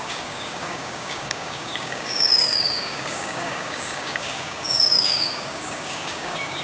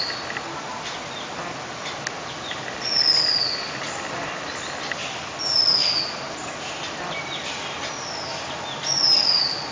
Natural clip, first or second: second